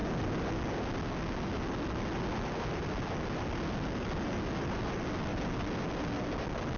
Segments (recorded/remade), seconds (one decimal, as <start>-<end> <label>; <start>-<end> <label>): 0.0-6.8 recorded